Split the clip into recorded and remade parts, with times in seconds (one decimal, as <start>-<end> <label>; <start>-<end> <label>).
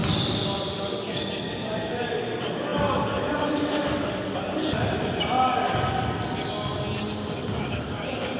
0.0-8.4 recorded